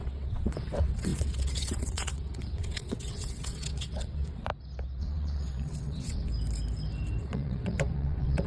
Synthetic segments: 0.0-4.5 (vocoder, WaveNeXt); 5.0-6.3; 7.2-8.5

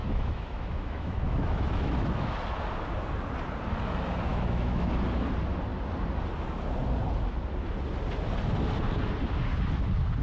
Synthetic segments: 0.0-2.3 (autoencoder, DAC-VAE); 4.3-4.9

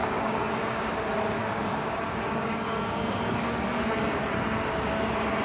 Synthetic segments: 0.0-0.9 (codec, DAC); 1.4-4.2

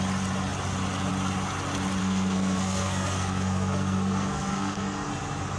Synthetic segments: 2.0-5.1 (codec, SNAC)